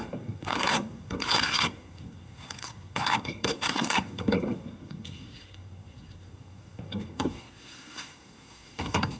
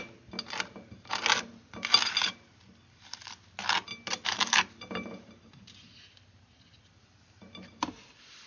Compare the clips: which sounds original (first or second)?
second